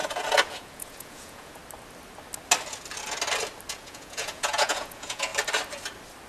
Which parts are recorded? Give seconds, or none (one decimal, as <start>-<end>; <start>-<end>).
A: 1.6-3.7; 5.3-6.3